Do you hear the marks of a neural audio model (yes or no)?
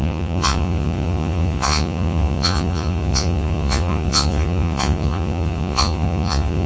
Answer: yes